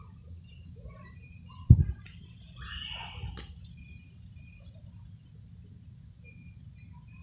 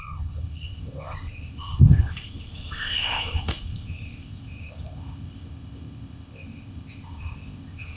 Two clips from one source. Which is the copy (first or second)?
second